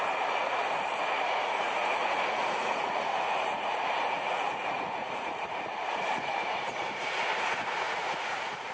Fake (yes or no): yes